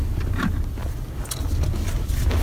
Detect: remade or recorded recorded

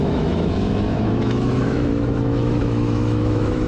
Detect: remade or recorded remade